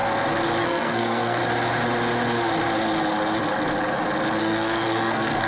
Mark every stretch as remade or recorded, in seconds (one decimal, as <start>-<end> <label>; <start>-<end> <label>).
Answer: 0.0-0.6 recorded; 0.6-1.4 remade; 1.4-4.4 recorded; 4.4-5.5 remade